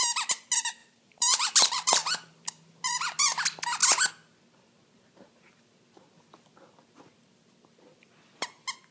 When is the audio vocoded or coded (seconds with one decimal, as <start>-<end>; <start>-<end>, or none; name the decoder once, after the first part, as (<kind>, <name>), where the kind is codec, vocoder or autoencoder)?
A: 0.8-3.4 (vocoder, BigVGAN v2)